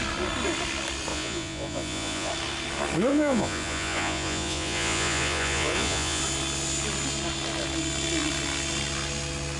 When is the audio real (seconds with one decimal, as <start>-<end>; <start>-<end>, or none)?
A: 0.0-1.1; 2.3-3.1; 6.2-9.6